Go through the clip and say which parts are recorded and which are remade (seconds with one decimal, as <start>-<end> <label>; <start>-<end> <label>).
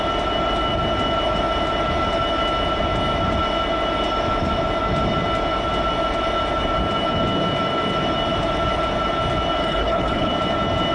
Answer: 0.0-9.6 recorded; 9.6-10.3 remade; 10.3-10.9 recorded